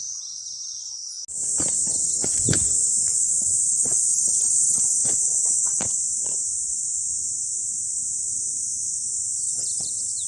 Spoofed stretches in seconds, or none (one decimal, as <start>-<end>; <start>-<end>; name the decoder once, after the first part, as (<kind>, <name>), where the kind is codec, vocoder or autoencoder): 2.2-4.1 (vocoder, Vocos); 5.0-9.5